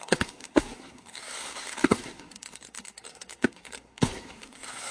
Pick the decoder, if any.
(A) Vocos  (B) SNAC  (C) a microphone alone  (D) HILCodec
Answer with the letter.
B